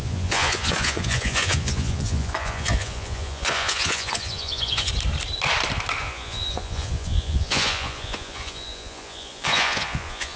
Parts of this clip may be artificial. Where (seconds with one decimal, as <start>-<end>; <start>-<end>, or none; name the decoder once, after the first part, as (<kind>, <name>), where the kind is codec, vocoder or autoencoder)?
0.0-4.9 (vocoder, Vocos); 6.0-10.4